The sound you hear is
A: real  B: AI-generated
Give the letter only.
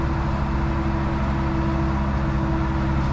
A